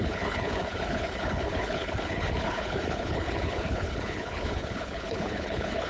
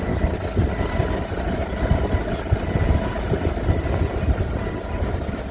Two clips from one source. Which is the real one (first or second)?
second